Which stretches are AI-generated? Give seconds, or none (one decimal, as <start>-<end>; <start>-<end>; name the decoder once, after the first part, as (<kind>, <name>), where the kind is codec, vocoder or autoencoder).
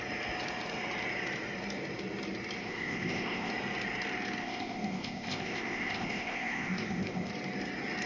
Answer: 2.6-3.5 (codec, ZipCodec); 4.4-7.3